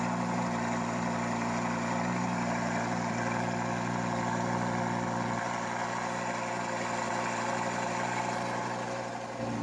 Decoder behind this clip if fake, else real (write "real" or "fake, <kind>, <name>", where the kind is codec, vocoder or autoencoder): real